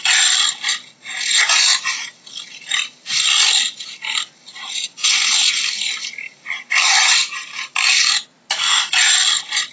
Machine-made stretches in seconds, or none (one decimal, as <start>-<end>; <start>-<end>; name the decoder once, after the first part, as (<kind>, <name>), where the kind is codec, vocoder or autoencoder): none